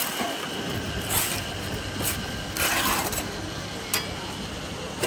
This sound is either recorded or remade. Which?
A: recorded